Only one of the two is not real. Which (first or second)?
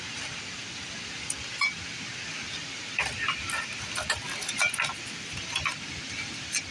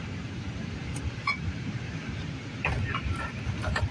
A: second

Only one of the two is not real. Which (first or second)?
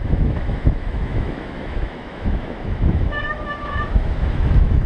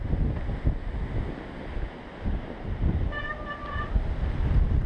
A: first